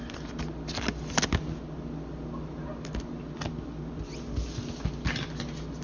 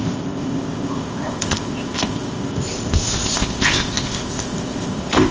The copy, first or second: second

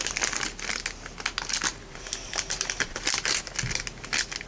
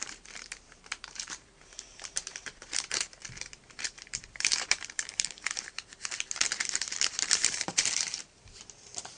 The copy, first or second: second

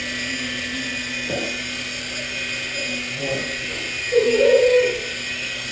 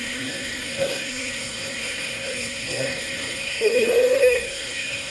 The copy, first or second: second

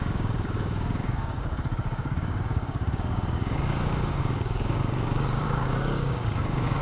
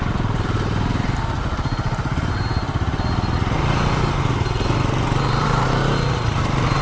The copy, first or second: first